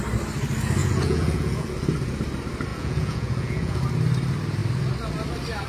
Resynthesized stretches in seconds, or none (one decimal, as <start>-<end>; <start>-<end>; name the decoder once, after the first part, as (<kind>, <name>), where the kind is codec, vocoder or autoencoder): 0.8-1.7 (vocoder, Vocos); 2.7-3.8